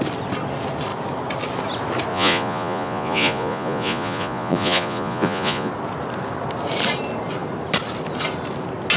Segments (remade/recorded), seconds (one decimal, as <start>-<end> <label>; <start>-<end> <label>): 0.0-2.1 recorded; 2.1-5.7 remade; 5.7-9.0 recorded